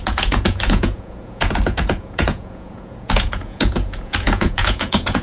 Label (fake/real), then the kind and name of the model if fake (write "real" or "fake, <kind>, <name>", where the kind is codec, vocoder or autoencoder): fake, vocoder, Vocos